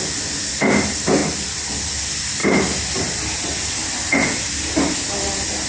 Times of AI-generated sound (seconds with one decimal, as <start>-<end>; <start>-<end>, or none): none